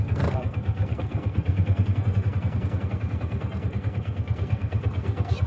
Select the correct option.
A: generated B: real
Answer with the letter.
A